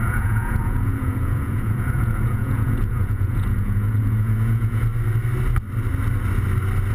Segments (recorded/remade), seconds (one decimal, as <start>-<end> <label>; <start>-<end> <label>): 0.0-4.9 remade; 4.9-6.9 recorded